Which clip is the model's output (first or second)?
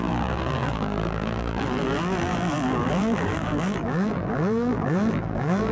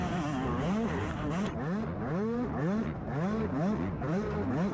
first